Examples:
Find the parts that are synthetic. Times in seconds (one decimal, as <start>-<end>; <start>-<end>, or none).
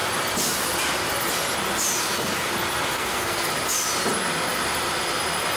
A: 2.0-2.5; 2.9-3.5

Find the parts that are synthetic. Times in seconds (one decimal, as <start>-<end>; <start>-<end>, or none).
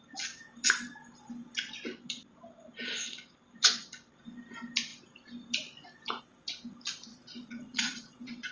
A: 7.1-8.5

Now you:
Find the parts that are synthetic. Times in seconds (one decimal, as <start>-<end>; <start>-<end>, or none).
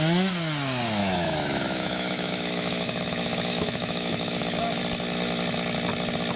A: 1.0-4.8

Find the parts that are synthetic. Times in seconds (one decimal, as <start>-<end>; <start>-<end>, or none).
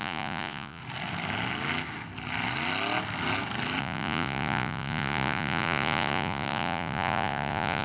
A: 0.0-0.8; 3.8-7.8